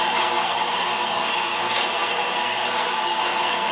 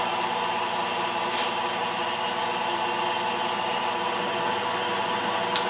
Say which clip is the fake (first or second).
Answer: first